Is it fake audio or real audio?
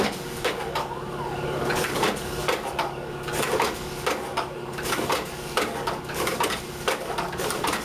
fake